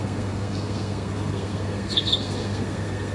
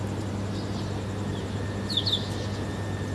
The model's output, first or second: first